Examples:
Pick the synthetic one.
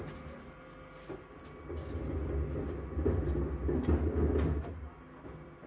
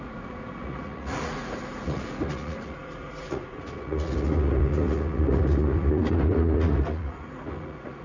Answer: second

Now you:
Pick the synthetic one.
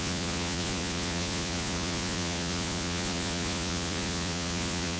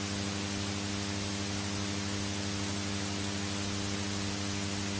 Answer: first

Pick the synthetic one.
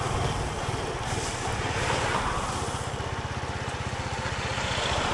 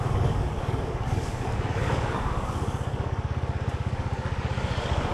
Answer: second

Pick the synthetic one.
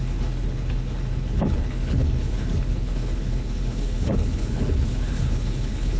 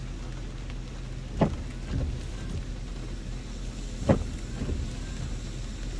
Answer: first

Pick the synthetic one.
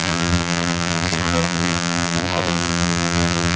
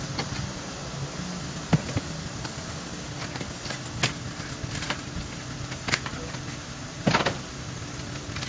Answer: first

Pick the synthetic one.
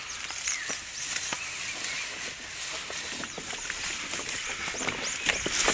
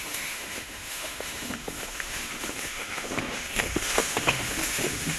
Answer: second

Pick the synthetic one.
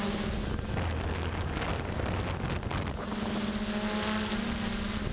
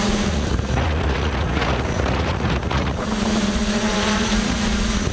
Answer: second